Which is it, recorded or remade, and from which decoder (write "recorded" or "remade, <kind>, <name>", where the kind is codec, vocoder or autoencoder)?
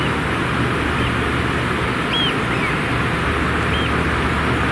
recorded